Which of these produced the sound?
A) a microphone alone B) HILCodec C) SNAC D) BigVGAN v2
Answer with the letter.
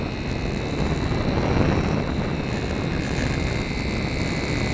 A